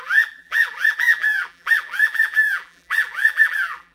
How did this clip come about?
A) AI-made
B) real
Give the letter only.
A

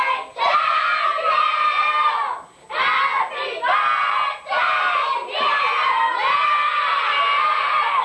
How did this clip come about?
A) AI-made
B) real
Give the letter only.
B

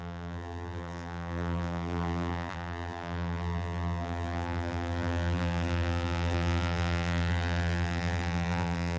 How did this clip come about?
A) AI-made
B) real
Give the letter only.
A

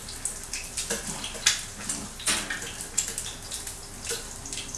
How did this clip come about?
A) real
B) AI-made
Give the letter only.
A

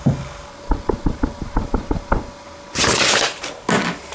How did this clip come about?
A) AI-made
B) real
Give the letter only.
B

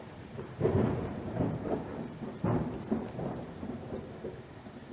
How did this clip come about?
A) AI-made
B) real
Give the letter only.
A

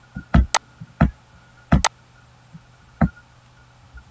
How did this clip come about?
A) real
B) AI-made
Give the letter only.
A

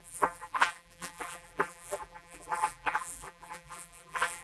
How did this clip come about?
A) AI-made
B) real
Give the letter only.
A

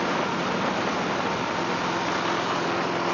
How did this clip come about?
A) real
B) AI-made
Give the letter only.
A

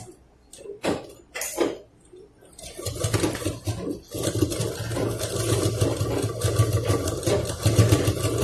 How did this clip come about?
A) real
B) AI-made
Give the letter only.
A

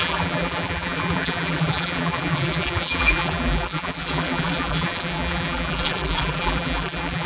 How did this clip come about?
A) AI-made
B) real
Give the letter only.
A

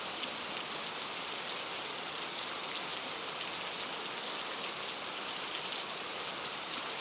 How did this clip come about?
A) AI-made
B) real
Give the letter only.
B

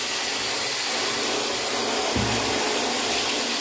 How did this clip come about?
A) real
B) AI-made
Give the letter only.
A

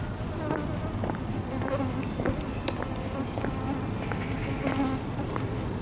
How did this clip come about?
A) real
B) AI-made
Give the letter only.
A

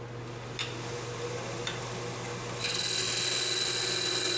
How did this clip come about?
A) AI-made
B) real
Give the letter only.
B